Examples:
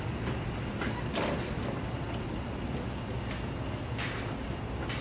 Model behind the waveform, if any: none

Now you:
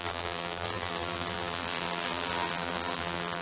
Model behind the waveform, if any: vocoder, BigVGAN v2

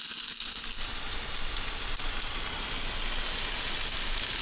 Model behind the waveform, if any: none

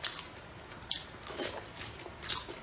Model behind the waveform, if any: none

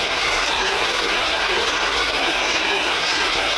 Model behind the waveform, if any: codec, SNAC